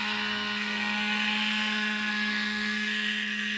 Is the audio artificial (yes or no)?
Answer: yes